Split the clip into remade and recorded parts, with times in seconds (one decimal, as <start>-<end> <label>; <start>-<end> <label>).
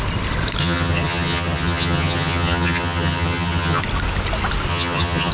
0.0-0.6 recorded; 0.6-3.8 remade; 3.8-4.7 recorded; 4.7-5.3 remade